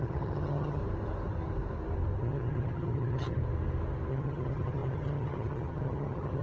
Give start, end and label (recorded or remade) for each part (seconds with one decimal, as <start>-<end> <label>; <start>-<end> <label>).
0.0-0.8 remade; 0.8-2.2 recorded; 2.2-3.4 remade; 3.4-4.1 recorded; 4.1-6.4 remade